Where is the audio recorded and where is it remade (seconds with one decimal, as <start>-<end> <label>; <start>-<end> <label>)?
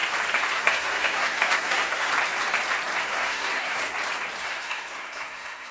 0.0-0.5 recorded; 0.5-2.1 remade; 2.1-3.0 recorded; 3.0-3.8 remade; 3.8-4.4 recorded; 4.4-5.7 remade